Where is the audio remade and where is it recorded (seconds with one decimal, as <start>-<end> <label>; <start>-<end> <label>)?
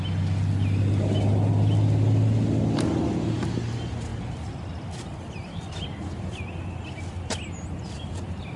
0.0-8.6 recorded